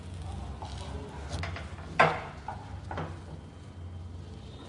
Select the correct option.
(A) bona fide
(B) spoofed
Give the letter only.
A